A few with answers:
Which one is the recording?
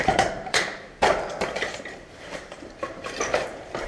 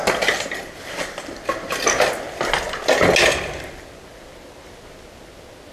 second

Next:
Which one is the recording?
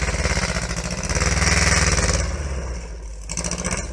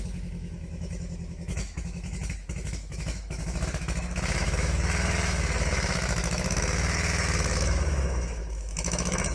first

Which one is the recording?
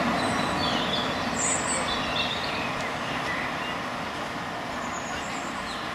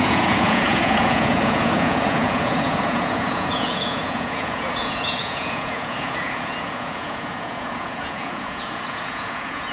first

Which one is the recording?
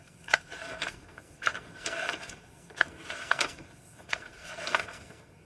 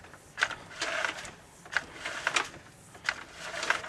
second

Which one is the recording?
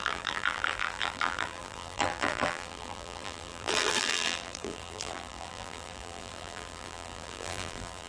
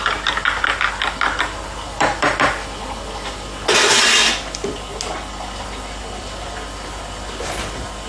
second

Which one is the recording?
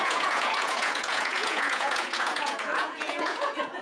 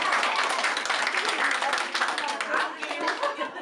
second